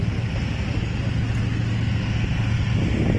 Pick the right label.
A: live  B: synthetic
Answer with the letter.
A